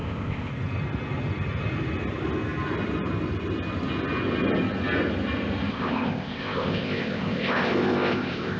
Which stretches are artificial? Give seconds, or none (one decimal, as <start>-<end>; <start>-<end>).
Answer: 0.0-0.5; 5.7-8.6